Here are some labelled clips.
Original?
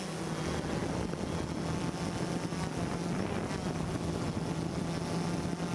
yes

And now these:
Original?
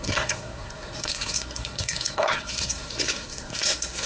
no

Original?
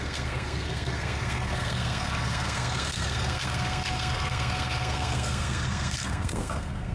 no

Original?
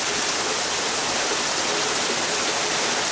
yes